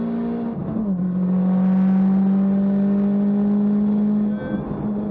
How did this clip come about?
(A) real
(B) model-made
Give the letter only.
A